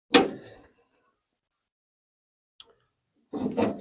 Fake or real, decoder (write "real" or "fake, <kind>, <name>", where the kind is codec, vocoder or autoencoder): real